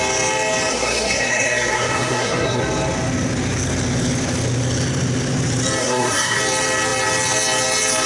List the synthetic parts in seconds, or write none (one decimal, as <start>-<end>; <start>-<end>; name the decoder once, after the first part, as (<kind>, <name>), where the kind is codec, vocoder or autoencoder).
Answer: 0.7-2.6 (codec, SNAC); 5.8-6.4